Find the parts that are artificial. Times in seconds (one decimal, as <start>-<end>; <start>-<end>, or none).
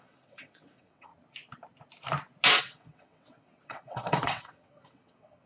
0.0-1.1; 2.6-5.5